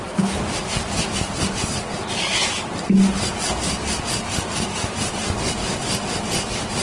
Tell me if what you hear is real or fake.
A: real